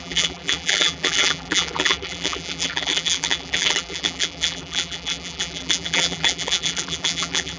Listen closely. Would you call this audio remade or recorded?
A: remade